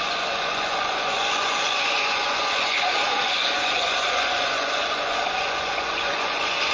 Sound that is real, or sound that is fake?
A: fake